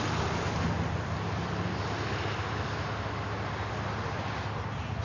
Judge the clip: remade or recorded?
recorded